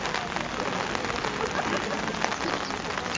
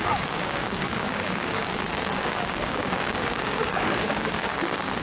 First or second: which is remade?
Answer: second